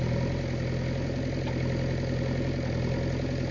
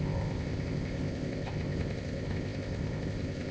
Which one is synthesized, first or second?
second